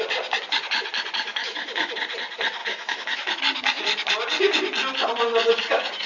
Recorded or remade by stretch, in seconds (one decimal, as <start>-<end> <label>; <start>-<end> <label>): 0.0-1.3 recorded; 1.3-1.9 remade; 1.9-2.6 recorded; 2.6-3.4 remade; 3.4-6.1 recorded